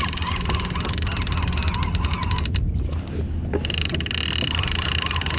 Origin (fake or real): real